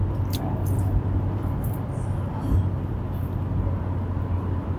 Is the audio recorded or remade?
recorded